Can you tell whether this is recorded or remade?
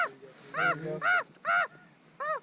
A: recorded